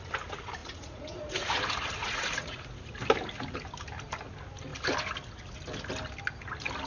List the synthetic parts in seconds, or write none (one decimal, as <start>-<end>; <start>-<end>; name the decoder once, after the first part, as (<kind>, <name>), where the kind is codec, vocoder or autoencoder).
0.6-1.6 (vocoder, Vocos); 2.0-2.6

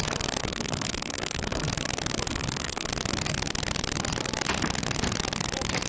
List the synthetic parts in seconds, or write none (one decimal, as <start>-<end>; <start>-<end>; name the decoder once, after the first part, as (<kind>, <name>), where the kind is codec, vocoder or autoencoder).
0.4-1.7 (codec, SNAC); 2.3-2.9

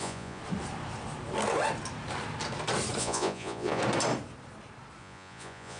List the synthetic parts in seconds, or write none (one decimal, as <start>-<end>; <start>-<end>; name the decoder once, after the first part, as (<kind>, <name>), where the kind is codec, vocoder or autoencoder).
0.0-0.4 (vocoder, Vocos); 3.0-3.8; 5.0-5.8

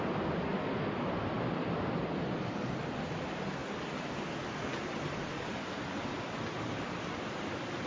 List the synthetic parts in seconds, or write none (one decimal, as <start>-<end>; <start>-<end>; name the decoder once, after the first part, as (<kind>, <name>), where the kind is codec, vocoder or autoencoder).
none

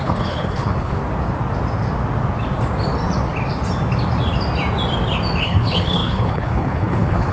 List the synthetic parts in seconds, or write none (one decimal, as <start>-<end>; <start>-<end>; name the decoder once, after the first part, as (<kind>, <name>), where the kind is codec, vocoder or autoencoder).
0.0-1.0 (codec, HILCodec); 5.4-7.3

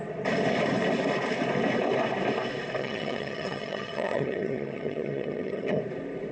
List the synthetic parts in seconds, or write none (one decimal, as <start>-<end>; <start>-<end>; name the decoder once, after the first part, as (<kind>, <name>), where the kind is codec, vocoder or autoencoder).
2.8-5.8 (vocoder, HiFi-GAN)

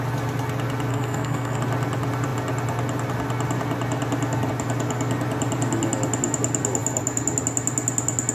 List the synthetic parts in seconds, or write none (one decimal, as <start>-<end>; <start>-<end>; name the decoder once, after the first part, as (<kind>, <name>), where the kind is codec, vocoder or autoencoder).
0.9-1.6 (codec, SNAC)